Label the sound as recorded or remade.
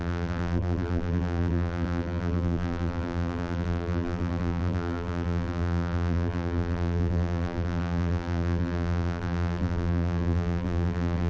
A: remade